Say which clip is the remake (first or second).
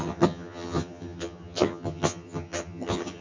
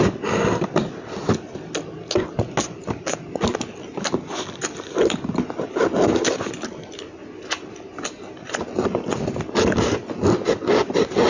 first